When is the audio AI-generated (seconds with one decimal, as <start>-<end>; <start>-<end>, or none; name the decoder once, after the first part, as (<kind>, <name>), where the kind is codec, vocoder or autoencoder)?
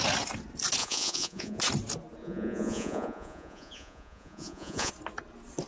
0.8-1.6 (vocoder, Vocos); 2.2-4.9